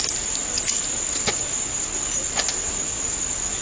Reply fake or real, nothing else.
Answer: real